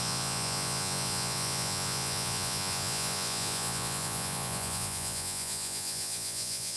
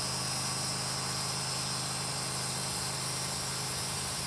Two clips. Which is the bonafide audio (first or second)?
second